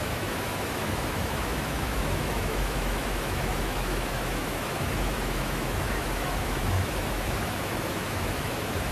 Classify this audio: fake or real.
fake